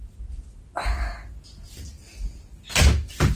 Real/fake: real